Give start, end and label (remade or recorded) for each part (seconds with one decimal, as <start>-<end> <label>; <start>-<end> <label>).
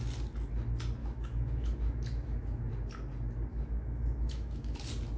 0.0-1.0 recorded; 1.0-2.7 remade; 2.7-3.5 recorded; 3.5-4.8 remade; 4.8-5.2 recorded